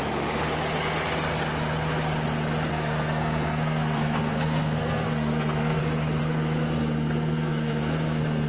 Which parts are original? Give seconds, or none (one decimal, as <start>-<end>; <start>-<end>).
0.0-2.7; 5.8-6.2